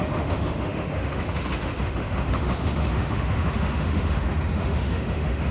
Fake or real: fake